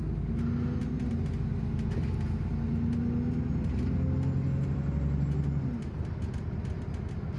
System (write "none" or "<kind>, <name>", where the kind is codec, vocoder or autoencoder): none